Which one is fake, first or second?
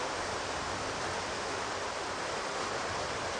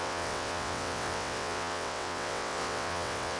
second